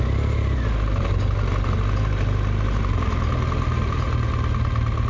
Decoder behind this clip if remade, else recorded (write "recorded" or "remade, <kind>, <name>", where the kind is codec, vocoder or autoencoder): recorded